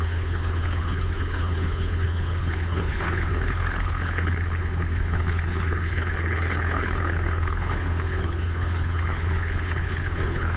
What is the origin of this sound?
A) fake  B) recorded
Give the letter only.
A